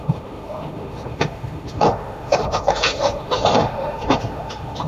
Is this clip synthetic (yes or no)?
yes